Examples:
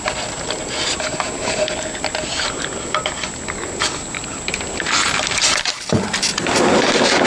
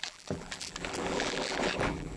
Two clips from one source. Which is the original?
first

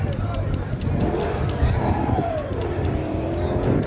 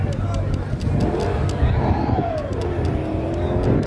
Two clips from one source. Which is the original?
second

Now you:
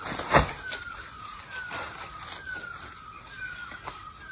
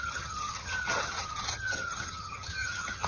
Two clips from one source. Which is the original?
first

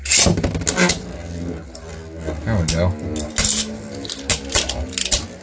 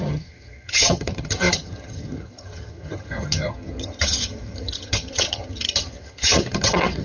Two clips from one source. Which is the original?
first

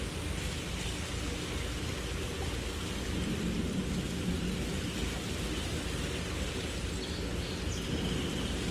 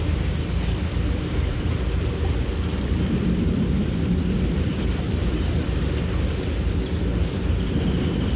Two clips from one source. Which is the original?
first